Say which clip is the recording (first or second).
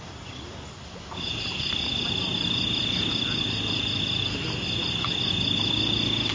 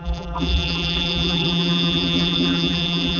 first